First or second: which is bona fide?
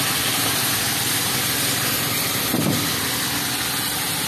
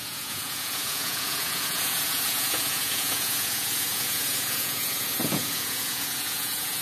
first